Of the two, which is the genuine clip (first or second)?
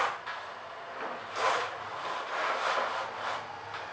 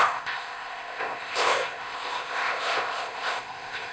first